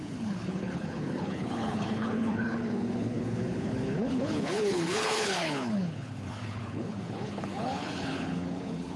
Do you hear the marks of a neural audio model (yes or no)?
yes